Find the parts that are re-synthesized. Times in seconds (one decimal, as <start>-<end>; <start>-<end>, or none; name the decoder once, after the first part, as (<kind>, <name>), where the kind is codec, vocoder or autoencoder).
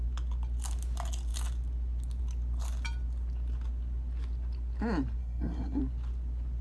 5.2-5.8 (codec, SNAC)